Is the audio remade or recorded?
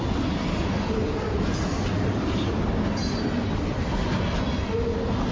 recorded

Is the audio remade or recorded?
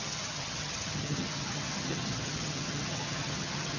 remade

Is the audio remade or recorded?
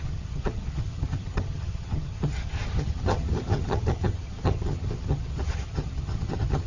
remade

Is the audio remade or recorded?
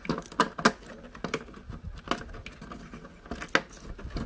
recorded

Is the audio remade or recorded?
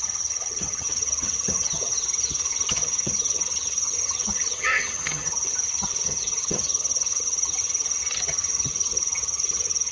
remade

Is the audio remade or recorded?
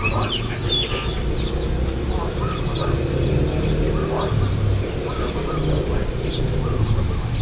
recorded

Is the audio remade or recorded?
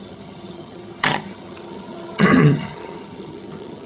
remade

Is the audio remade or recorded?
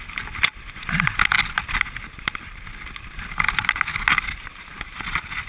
recorded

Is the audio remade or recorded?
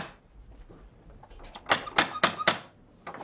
recorded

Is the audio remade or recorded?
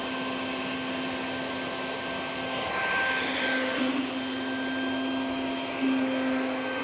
recorded